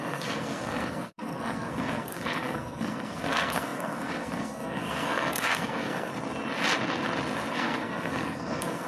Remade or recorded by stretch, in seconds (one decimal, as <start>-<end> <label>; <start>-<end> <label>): 0.0-6.1 remade; 6.1-7.5 recorded; 7.5-8.9 remade